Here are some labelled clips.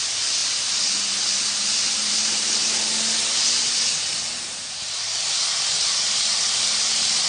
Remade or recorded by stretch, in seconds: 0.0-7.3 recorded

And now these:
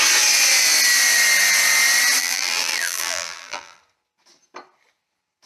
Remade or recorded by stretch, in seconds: 0.0-2.2 recorded; 2.2-3.8 remade; 3.8-5.5 recorded

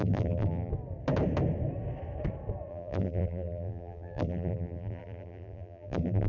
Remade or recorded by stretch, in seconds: 0.0-0.7 remade; 0.7-2.7 recorded; 2.7-6.3 remade